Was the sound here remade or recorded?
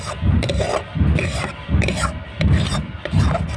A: remade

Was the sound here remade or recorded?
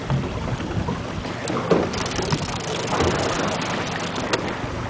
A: recorded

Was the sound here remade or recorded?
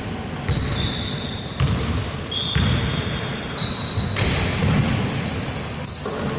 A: recorded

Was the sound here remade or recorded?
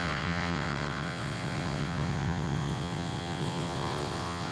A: remade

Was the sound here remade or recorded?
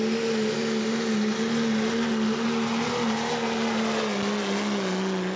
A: recorded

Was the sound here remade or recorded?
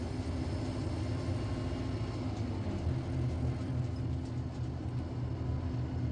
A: recorded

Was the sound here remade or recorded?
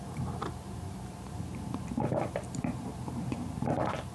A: remade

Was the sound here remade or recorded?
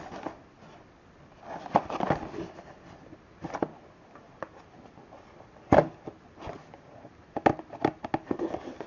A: recorded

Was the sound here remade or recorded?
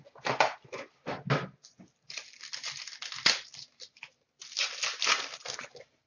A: recorded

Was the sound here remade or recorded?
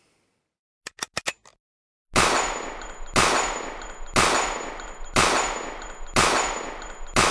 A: recorded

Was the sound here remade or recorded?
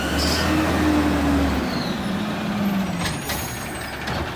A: recorded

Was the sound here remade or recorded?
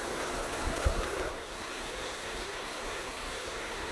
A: remade